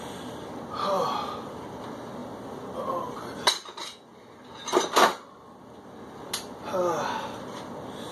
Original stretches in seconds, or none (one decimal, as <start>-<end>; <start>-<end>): 0.0-8.1